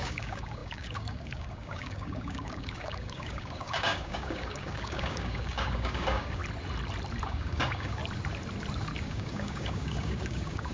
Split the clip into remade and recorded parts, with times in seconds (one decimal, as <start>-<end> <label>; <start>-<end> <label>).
0.0-6.4 remade; 6.4-7.2 recorded; 7.2-8.0 remade; 8.0-9.0 recorded; 9.0-10.7 remade

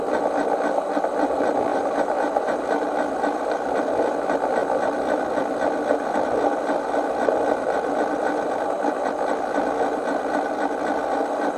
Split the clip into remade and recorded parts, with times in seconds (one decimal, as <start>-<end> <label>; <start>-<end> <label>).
0.0-1.7 recorded; 1.7-2.6 remade; 2.6-11.6 recorded

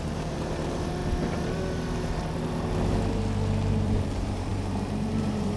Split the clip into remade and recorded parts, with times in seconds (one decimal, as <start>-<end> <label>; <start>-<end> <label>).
0.0-1.0 remade; 1.0-3.7 recorded; 3.7-5.6 remade

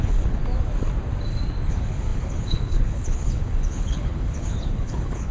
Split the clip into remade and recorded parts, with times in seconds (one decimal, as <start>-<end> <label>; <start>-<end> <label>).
0.0-0.4 remade; 0.4-1.7 recorded; 1.7-5.3 remade

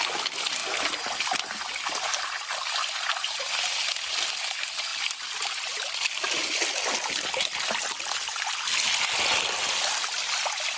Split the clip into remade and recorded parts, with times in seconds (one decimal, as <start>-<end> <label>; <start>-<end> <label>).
0.0-10.8 recorded

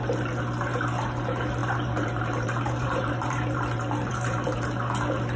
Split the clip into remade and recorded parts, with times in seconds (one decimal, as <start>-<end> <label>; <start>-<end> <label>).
0.0-1.6 recorded; 1.6-4.8 remade; 4.8-5.4 recorded

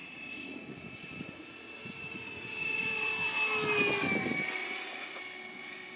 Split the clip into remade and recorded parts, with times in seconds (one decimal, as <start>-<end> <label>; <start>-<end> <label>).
0.0-3.1 remade; 3.1-4.6 recorded; 4.6-5.2 remade; 5.2-6.0 recorded